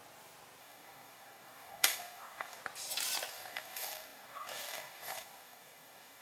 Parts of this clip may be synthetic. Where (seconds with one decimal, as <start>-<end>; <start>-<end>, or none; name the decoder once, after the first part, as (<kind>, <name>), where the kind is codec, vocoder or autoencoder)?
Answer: 0.6-2.6 (codec, DAC); 3.3-6.2